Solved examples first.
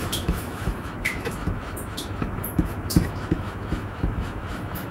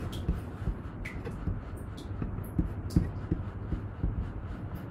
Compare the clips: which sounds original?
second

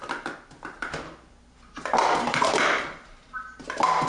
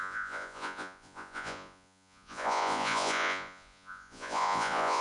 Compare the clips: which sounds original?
first